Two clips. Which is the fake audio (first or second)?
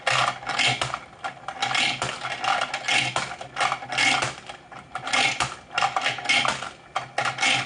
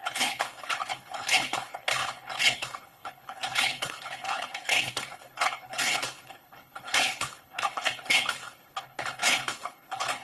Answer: second